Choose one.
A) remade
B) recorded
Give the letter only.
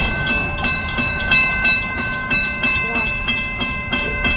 A